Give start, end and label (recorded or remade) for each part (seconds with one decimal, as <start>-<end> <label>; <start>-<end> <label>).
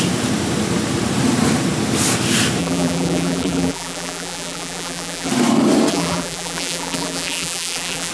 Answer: 0.0-2.6 recorded; 2.6-5.3 remade; 5.3-5.9 recorded; 5.9-8.1 remade